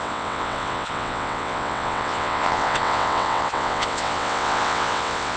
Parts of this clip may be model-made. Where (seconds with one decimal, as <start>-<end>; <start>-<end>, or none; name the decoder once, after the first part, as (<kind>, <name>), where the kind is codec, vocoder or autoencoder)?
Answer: 0.0-5.4 (vocoder, WaveNeXt)